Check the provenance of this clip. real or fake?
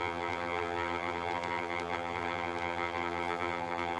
fake